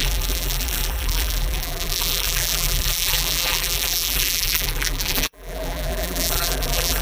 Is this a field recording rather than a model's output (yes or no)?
no